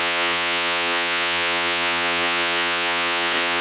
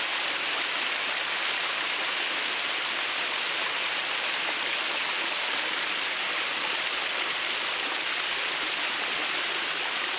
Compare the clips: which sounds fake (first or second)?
first